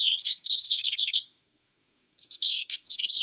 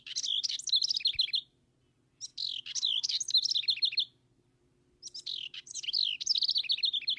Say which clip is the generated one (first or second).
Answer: first